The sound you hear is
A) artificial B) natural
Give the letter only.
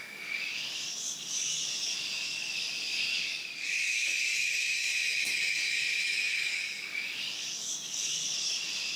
A